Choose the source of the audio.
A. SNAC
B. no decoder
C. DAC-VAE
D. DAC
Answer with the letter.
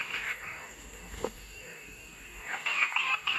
D